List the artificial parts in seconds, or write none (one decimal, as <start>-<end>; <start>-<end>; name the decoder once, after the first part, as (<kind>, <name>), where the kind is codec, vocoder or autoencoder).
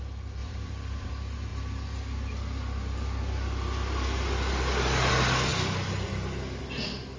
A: 0.4-1.1 (vocoder, BigVGAN v2); 5.5-6.1